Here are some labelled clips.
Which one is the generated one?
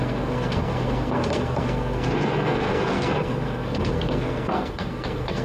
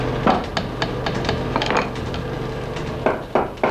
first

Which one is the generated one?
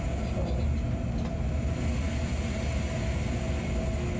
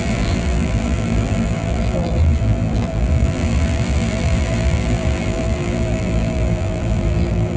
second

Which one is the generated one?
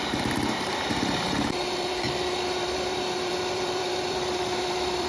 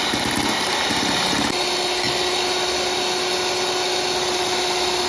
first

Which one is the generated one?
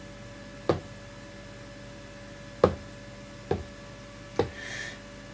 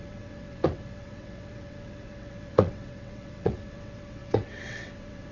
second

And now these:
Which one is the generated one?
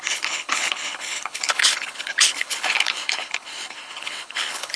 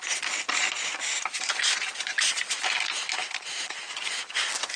first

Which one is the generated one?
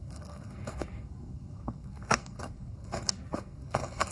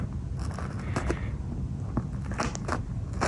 first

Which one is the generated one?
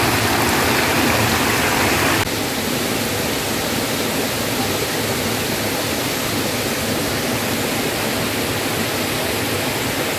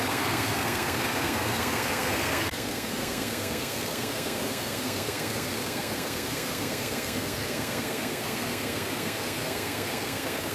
second